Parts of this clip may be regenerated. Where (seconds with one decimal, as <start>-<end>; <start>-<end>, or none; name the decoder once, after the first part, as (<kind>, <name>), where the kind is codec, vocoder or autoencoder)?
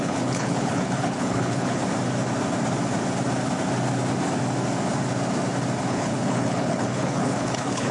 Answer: 0.0-1.8 (codec, HILCodec); 5.8-7.9